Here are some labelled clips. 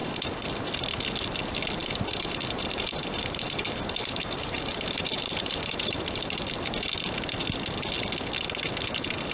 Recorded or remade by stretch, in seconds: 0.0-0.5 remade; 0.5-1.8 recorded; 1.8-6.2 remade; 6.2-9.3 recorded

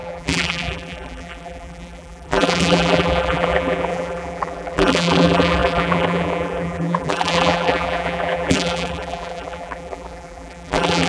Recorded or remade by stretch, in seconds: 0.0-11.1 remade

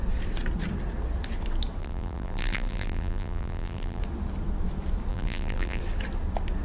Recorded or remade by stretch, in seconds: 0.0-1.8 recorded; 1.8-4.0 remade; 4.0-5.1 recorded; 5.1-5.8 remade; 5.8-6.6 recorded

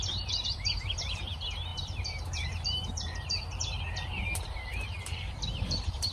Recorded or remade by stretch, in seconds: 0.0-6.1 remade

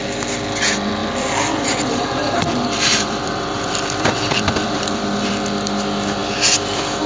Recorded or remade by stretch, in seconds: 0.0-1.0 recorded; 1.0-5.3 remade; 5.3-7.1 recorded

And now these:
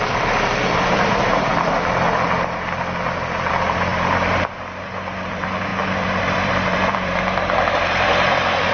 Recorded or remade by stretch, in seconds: 0.0-1.5 remade; 1.5-3.5 recorded; 3.5-8.7 remade

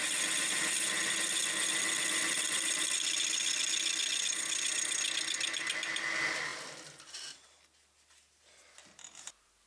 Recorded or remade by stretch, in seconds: 0.0-9.7 recorded